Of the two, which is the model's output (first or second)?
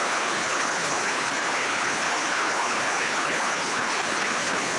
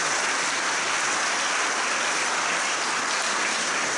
first